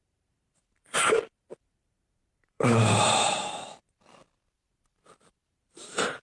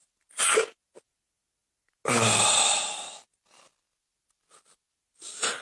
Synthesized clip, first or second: first